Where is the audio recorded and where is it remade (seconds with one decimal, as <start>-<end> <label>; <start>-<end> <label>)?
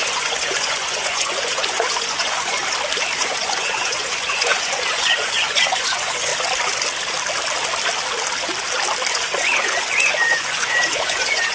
0.0-2.6 remade; 2.6-3.2 recorded; 3.2-6.3 remade; 6.3-9.1 recorded; 9.1-11.5 remade